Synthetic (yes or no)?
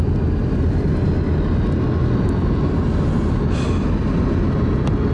no